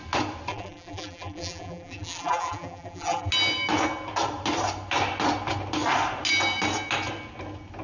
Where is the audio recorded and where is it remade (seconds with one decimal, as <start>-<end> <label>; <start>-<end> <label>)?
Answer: 0.0-0.5 recorded; 0.5-3.3 remade; 3.3-7.8 recorded

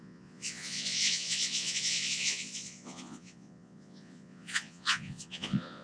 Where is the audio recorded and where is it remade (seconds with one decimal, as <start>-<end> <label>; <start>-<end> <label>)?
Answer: 0.0-5.8 remade